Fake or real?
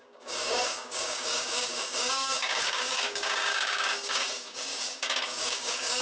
fake